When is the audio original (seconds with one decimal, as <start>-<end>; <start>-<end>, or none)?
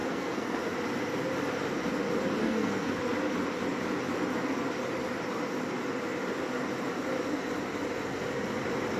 0.6-2.4; 3.0-9.0